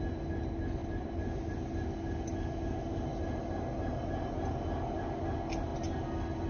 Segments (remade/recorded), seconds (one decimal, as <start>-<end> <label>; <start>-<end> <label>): 0.0-0.8 recorded; 0.8-1.5 remade; 1.5-6.5 recorded